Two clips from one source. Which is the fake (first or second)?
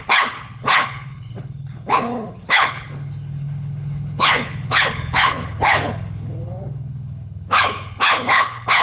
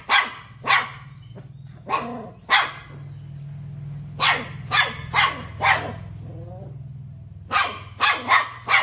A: first